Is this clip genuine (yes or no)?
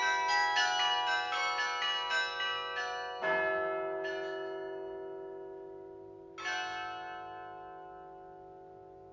yes